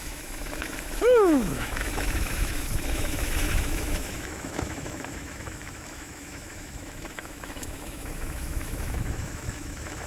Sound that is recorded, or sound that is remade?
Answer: remade